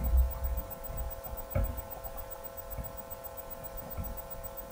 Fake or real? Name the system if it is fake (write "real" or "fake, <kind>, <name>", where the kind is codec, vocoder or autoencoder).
real